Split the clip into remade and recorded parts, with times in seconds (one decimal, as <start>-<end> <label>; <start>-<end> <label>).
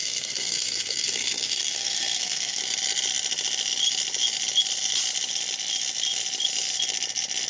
0.0-2.6 remade; 2.6-7.5 recorded